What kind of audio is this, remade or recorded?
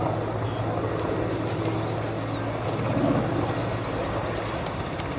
recorded